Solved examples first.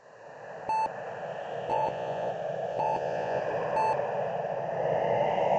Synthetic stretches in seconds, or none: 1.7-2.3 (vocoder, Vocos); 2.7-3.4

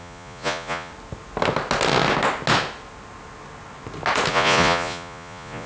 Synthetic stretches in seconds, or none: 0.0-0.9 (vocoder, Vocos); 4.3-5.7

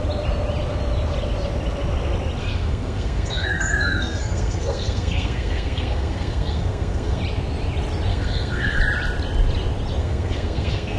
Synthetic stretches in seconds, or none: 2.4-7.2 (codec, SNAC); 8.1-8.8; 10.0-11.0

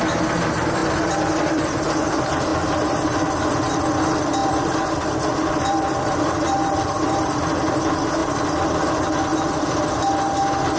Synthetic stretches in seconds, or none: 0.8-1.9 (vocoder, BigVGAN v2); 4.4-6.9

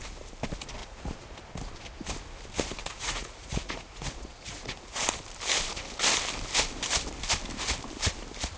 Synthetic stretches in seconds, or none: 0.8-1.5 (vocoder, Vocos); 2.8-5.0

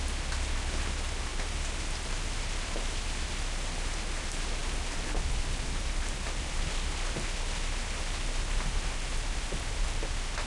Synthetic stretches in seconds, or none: none

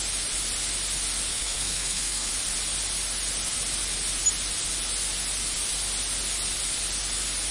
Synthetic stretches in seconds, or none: 1.3-2.3 (codec, SNAC)